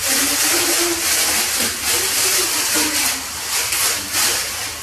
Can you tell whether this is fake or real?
real